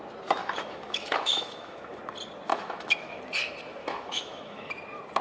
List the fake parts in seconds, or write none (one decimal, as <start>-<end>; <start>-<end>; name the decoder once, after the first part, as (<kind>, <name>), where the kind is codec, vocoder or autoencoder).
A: 0.4-2.0 (autoencoder, DAC-VAE); 2.5-3.2; 3.8-4.7

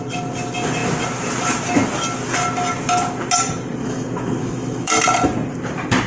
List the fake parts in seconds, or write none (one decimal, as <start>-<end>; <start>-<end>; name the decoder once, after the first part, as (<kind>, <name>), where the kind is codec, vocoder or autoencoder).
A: 3.8-4.9 (autoencoder, DAC-VAE)

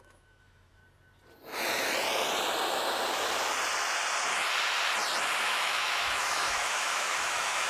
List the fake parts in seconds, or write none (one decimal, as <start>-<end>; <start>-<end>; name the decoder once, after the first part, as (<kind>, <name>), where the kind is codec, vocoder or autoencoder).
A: 0.0-0.8 (autoencoder, DAC-VAE); 5.4-7.7